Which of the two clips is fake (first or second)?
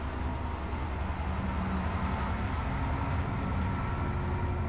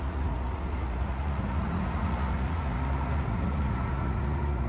second